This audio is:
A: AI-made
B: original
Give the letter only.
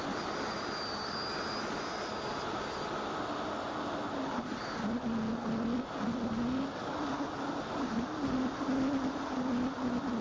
B